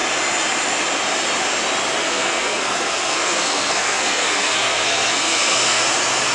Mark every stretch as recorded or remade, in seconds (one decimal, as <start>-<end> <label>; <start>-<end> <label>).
0.0-2.0 recorded; 2.0-5.8 remade; 5.8-6.3 recorded

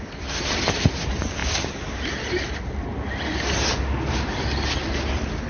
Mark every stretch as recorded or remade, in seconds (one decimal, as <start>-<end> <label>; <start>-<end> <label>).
0.0-5.5 recorded

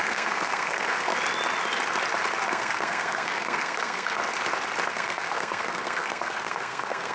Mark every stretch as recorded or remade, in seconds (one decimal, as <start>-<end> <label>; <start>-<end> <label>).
0.0-1.1 remade; 1.1-2.5 recorded; 2.5-4.2 remade; 4.2-4.9 recorded; 4.9-7.1 remade

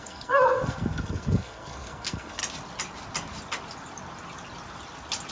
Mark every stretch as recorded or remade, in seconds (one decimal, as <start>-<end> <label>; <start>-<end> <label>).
0.0-2.4 remade; 2.4-5.3 recorded

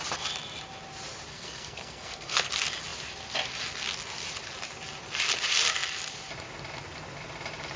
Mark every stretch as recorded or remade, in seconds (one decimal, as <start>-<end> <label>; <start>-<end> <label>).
0.0-1.3 recorded; 1.3-2.5 remade; 2.5-7.8 recorded